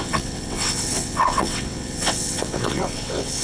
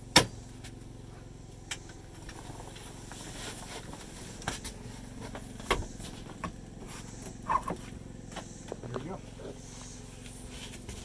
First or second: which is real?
second